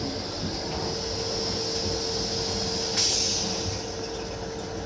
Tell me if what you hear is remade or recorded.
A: recorded